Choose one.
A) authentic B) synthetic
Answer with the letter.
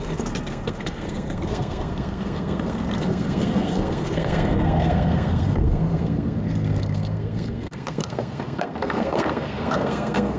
B